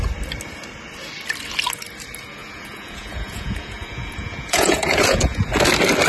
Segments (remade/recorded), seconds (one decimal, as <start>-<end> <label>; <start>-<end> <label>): 0.0-2.4 recorded; 2.4-5.5 remade; 5.5-6.1 recorded